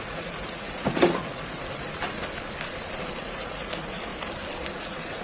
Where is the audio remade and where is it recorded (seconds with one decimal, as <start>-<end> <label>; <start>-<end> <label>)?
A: 0.0-1.6 remade; 1.6-3.2 recorded; 3.2-4.1 remade; 4.1-4.8 recorded; 4.8-5.2 remade